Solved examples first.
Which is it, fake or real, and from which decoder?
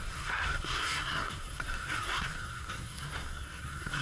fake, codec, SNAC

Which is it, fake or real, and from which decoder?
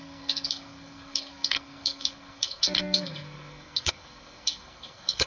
fake, codec, SNAC